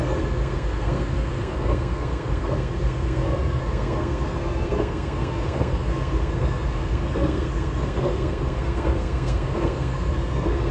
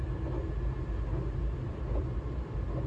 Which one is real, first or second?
second